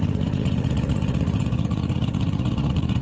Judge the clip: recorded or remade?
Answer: remade